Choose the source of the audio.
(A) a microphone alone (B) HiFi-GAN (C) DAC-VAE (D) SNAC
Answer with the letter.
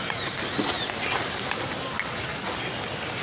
A